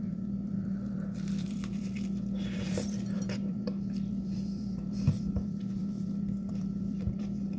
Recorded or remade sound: remade